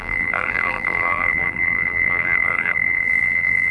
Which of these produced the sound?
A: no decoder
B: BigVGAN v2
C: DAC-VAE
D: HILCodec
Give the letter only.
B